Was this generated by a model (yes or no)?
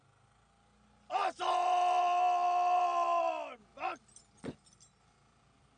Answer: no